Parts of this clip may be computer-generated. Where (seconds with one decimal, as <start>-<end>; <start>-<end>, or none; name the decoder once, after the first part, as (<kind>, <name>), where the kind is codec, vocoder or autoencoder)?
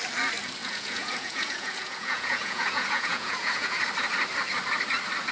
0.6-3.8 (vocoder, Vocos)